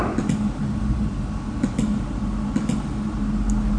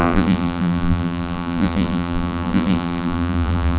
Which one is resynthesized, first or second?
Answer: second